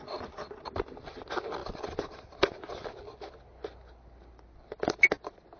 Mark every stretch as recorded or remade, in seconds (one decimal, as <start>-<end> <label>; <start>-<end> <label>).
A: 0.0-5.6 recorded